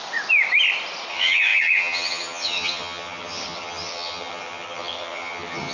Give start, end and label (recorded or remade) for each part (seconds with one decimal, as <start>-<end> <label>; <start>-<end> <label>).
0.0-1.1 recorded; 1.1-5.7 remade